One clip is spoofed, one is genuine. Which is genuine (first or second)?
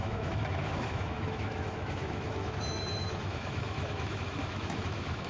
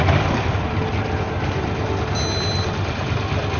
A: second